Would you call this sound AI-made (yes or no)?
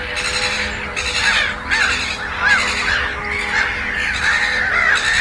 no